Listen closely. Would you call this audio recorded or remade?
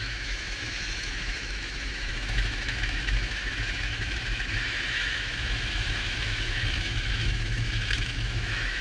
remade